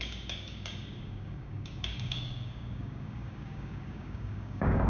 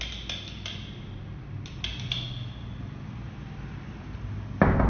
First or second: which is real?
second